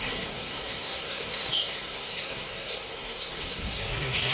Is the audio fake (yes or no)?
yes